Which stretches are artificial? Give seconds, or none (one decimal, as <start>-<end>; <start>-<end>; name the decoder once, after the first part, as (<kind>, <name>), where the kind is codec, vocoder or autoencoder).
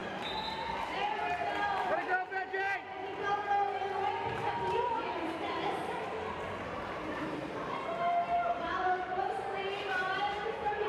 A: 1.5-2.0 (vocoder, BigVGAN v2); 4.3-5.8; 6.9-10.9